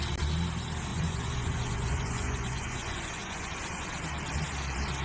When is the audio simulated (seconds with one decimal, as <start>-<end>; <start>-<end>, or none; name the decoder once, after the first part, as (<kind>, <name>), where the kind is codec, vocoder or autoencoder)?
0.9-3.9 (vocoder, Vocos)